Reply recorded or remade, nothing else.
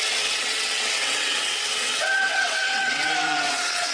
remade